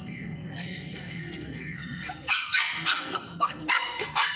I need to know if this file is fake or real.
fake